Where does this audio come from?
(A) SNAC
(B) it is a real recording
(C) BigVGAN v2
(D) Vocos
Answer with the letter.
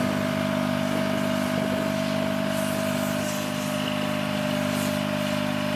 B